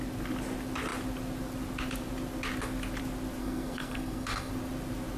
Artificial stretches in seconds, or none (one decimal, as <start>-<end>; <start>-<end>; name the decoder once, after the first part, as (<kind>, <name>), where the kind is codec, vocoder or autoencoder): 3.4-4.5 (codec, SNAC)